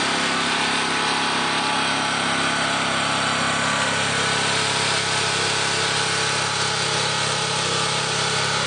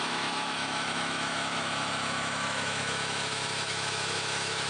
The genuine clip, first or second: first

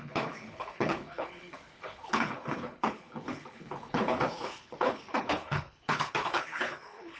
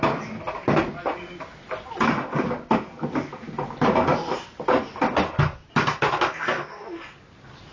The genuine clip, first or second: second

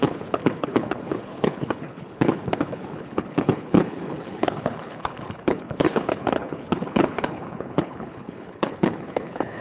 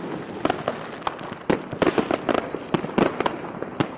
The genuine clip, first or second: second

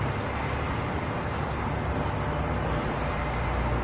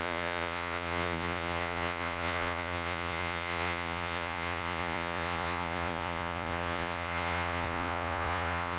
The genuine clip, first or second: first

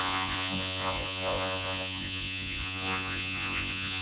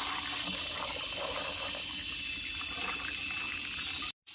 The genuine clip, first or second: second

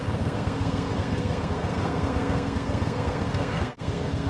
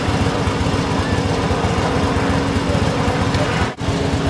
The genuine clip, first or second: second